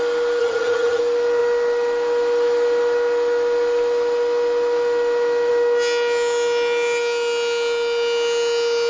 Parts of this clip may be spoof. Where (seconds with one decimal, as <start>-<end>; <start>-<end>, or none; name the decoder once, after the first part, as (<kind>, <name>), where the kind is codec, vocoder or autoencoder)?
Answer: 0.4-1.0 (vocoder, HiFi-GAN)